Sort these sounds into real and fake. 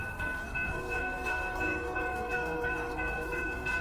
fake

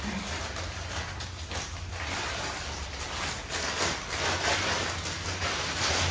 real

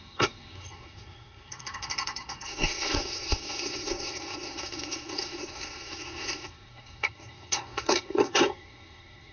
fake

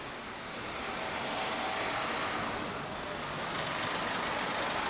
real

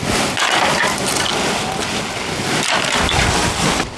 real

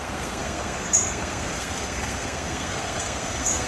fake